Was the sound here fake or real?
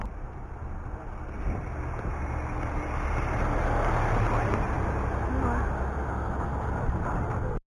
real